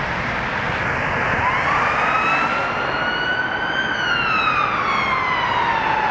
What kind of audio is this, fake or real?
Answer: real